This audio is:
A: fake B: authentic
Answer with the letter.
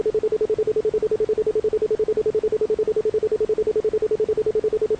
B